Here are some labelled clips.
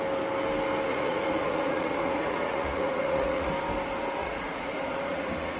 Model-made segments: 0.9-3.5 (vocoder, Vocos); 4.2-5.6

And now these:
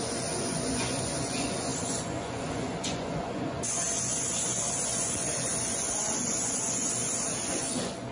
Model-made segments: 0.0-8.1 (vocoder, Vocos)